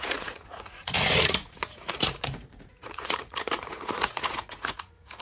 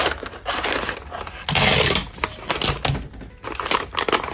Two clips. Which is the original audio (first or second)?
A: second